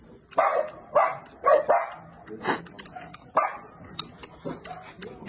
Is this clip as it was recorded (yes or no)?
yes